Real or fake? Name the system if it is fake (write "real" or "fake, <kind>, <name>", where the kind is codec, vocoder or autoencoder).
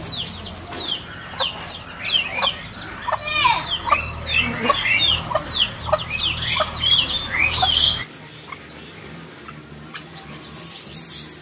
real